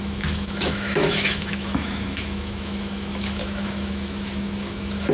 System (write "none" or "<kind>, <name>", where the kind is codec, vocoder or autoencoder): autoencoder, DAC-VAE